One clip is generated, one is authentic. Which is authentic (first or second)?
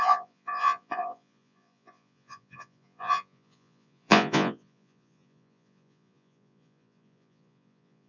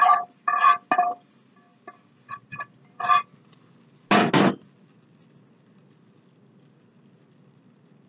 second